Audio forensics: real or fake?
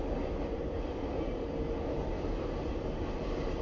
real